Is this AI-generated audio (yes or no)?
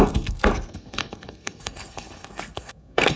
yes